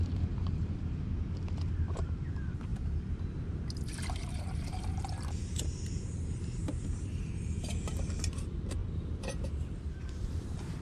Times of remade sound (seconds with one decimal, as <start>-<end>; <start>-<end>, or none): 0.0-1.1; 1.7-8.8; 9.4-10.8

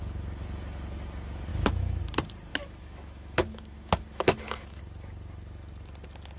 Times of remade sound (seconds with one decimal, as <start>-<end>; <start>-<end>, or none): 1.5-2.0; 2.5-4.8

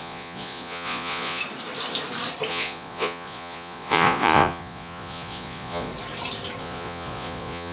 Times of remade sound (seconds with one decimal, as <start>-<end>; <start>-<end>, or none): 0.0-1.4; 2.5-5.9; 6.6-7.7

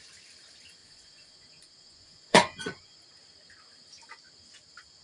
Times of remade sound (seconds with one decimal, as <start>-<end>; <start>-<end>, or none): 0.8-3.0

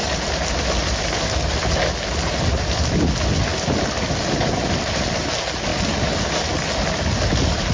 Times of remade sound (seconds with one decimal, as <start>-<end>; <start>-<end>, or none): none

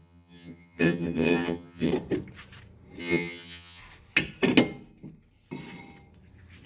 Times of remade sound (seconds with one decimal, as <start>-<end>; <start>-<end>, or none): 0.0-1.9; 3.0-3.8